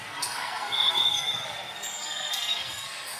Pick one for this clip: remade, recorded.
remade